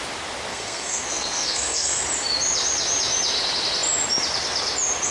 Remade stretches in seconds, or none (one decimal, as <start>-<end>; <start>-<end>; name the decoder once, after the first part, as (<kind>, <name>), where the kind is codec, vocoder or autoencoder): 0.5-2.0 (codec, SNAC)